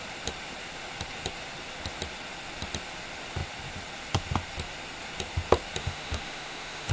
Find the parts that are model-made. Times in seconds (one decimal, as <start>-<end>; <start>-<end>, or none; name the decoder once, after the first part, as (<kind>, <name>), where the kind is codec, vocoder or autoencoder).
5.8-6.9 (autoencoder, DAC-VAE)